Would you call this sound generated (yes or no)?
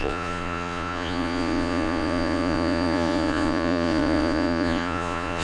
yes